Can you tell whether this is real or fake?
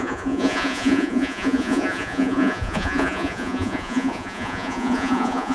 fake